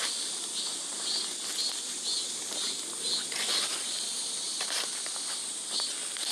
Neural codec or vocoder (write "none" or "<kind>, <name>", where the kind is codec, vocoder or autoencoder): none